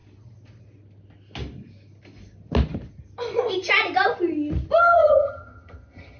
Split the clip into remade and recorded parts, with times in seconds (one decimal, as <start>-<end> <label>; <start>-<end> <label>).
0.0-4.8 recorded; 4.8-6.2 remade